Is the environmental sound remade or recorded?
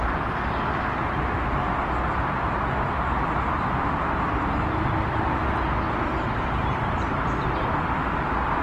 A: recorded